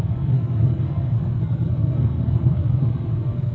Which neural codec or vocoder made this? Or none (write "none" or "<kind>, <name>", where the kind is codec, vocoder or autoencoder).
codec, SNAC